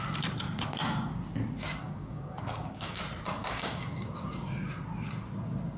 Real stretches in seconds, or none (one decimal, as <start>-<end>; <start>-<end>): 0.0-1.8; 3.0-3.4; 4.1-5.8